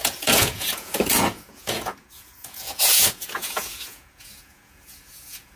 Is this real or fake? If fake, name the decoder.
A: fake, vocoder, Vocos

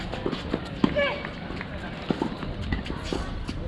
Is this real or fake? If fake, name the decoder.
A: real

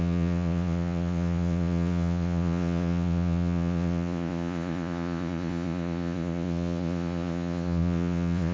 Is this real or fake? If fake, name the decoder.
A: fake, vocoder, Vocos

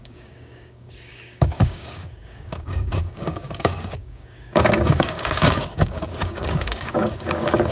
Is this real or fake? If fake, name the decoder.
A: fake, codec, DAC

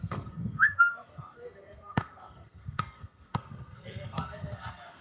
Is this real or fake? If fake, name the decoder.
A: fake, codec, SNAC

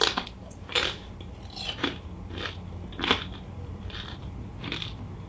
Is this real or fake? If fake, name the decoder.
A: real